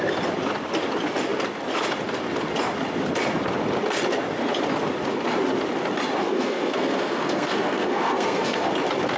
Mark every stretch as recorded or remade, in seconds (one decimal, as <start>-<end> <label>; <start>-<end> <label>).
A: 0.0-6.2 recorded; 6.2-8.7 remade; 8.7-9.2 recorded